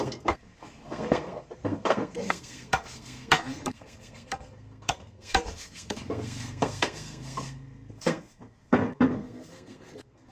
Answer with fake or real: fake